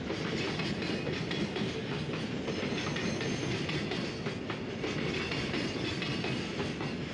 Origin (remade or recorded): recorded